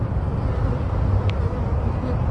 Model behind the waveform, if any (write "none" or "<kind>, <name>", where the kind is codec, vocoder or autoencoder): none